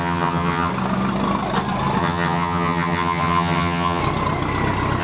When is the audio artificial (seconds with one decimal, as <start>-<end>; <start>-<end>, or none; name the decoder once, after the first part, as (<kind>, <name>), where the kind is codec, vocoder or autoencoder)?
0.0-0.7 (vocoder, HiFi-GAN); 2.0-4.0